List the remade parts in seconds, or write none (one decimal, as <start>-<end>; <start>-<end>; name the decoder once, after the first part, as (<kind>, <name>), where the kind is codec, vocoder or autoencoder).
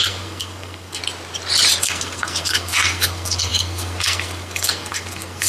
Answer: 0.0-1.0 (codec, SNAC); 1.8-5.5